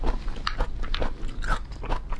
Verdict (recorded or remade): recorded